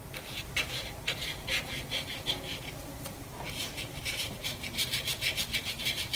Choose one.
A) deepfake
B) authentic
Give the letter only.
A